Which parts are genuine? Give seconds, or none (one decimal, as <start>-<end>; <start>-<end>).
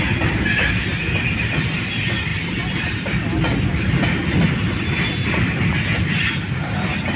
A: 0.0-2.3; 3.9-7.2